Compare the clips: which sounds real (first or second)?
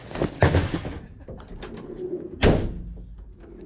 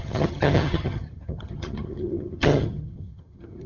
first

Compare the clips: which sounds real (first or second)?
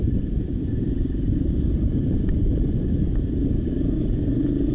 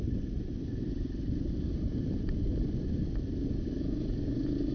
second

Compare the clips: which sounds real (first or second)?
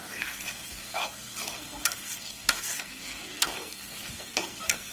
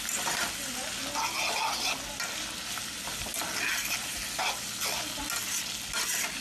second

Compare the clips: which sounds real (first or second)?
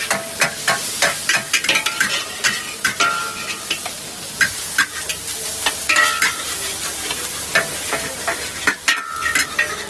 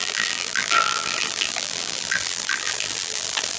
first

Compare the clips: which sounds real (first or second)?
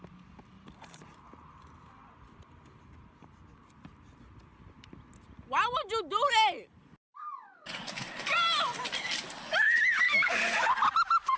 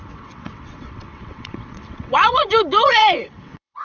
first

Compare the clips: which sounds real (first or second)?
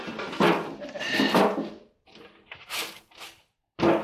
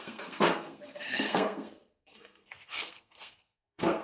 first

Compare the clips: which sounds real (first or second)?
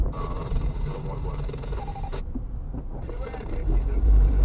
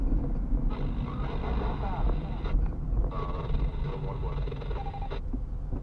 second